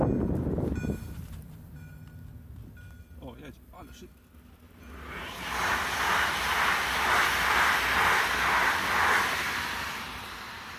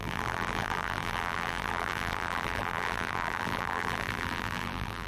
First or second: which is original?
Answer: first